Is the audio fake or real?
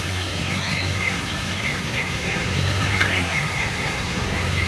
fake